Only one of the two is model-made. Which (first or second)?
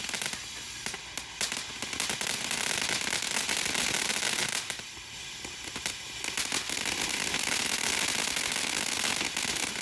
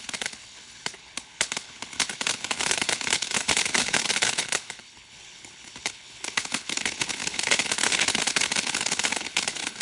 second